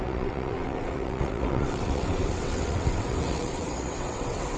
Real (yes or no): no